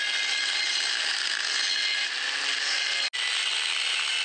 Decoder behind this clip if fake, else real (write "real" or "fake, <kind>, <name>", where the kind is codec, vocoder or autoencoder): real